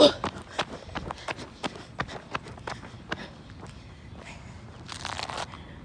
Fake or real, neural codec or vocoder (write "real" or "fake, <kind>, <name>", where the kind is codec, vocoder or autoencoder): real